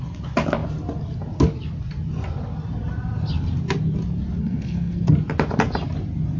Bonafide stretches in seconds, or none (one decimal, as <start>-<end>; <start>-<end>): 0.0-4.4; 5.1-6.4